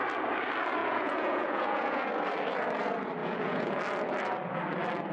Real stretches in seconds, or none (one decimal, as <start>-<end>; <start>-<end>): 0.0-0.8; 2.1-3.2; 3.8-5.1